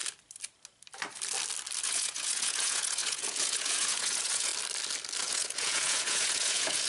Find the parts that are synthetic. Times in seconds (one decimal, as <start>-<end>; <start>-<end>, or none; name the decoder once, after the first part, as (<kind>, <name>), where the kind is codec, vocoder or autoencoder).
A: 1.8-4.5 (vocoder, Vocos); 5.2-6.9